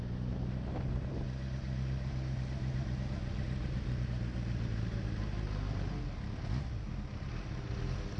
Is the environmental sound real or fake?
real